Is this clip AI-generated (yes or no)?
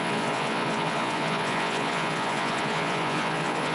yes